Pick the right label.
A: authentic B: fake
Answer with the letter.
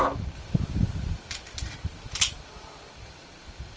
A